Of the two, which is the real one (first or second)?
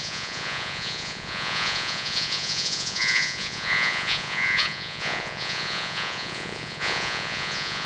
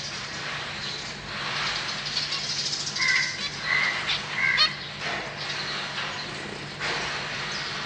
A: second